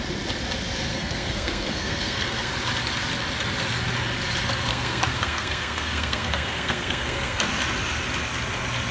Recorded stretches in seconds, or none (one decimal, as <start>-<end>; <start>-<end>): 0.0-0.9; 2.5-4.7; 7.5-8.9